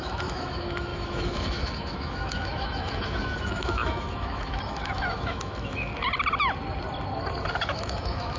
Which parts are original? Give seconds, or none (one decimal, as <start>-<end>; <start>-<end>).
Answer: 5.9-7.5

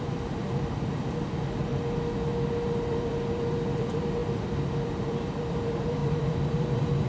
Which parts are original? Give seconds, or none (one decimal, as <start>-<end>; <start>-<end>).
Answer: 1.7-3.5